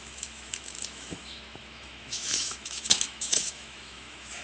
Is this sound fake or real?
fake